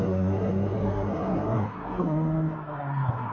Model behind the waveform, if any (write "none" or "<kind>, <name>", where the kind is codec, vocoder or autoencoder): codec, SNAC